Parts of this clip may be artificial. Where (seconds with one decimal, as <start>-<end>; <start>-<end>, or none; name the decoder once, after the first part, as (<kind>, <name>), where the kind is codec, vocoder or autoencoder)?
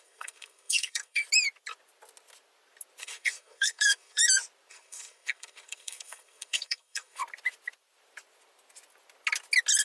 0.0-1.2 (codec, SNAC); 3.0-4.2; 4.7-7.2